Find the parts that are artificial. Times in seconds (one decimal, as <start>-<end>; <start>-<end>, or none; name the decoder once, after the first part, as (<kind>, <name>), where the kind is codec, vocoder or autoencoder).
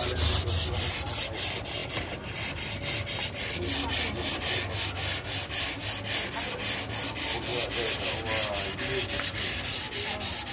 none